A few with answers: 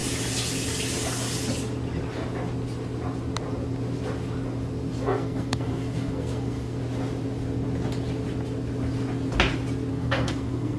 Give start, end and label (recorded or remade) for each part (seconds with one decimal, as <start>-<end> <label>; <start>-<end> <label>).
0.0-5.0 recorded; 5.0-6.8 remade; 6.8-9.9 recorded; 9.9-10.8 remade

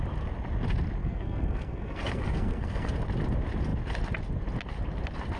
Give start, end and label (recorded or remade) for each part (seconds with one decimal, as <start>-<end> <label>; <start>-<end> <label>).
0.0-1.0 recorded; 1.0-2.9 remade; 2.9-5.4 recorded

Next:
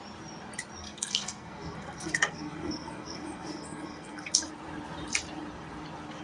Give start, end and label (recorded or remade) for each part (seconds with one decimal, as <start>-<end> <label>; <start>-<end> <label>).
0.0-0.8 recorded; 0.8-4.5 remade; 4.5-6.2 recorded

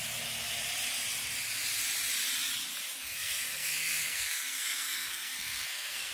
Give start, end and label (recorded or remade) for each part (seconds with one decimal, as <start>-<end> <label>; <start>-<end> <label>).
0.0-3.0 recorded; 3.0-6.1 remade

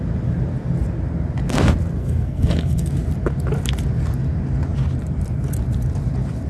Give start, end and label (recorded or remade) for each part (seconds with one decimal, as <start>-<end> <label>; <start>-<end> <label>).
0.0-2.0 recorded; 2.0-2.9 remade; 2.9-6.5 recorded

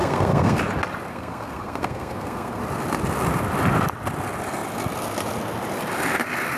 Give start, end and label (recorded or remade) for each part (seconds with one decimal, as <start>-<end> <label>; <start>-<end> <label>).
0.0-0.6 remade; 0.6-1.1 recorded; 1.1-2.6 remade; 2.6-6.6 recorded

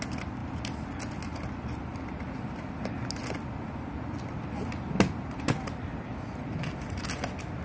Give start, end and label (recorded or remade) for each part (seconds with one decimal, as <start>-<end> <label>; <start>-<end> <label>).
0.0-7.6 recorded

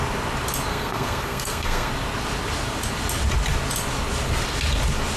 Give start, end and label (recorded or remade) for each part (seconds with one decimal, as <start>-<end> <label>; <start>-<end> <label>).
0.0-0.7 recorded; 0.7-1.9 remade; 1.9-5.2 recorded